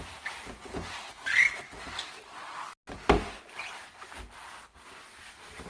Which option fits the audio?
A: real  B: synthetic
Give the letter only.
A